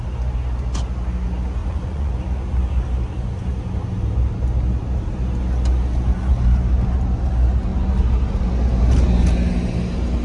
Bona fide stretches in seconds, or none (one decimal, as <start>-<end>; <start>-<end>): 0.0-1.6; 2.1-10.2